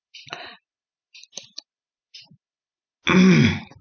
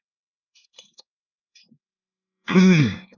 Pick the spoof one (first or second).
second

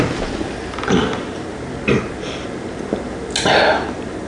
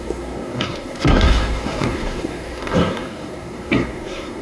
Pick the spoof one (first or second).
second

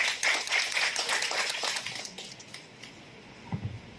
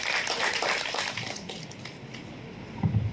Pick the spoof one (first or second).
first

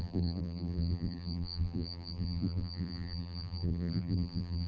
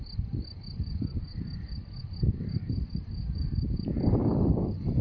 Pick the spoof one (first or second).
first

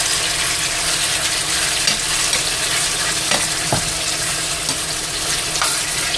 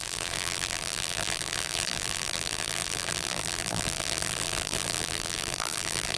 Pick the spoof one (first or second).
second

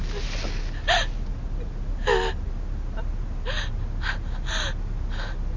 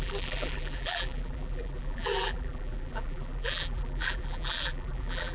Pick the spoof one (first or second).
second